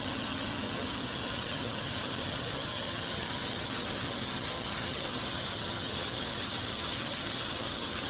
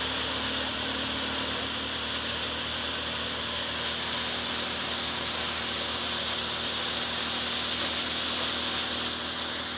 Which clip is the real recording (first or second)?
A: second